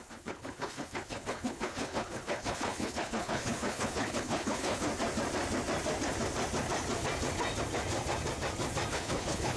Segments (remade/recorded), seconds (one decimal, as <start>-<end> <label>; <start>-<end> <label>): 0.0-4.9 remade; 4.9-8.9 recorded; 8.9-9.6 remade